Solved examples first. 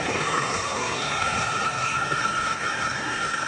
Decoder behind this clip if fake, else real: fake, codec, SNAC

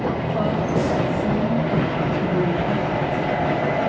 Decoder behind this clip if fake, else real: real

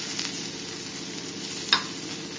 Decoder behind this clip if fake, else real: real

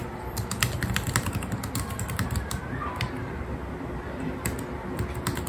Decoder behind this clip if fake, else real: real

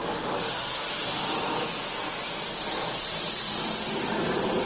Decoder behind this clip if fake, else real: real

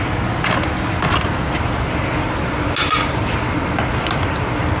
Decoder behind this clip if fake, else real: real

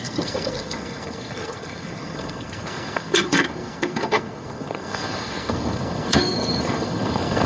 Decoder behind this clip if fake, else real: fake, codec, SNAC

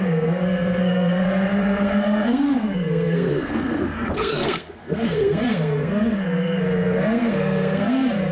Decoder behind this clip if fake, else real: fake, codec, SNAC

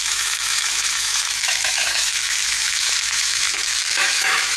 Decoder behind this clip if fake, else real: fake, autoencoder, DAC-VAE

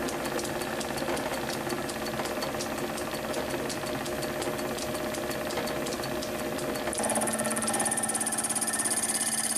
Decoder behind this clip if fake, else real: real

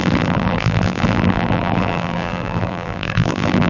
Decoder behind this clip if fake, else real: fake, vocoder, BigVGAN v2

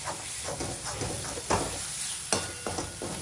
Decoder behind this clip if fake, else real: real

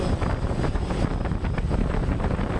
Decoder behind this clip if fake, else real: real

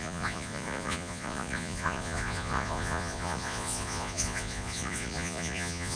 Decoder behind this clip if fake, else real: fake, vocoder, Vocos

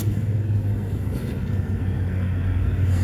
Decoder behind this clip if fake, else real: fake, codec, SNAC